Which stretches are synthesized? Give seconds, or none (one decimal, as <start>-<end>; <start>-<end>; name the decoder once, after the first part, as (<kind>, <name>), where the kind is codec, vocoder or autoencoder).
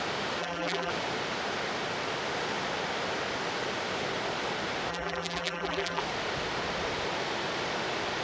0.4-0.9 (vocoder, BigVGAN v2); 4.9-6.0